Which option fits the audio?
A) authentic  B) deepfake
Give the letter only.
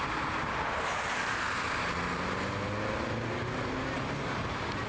A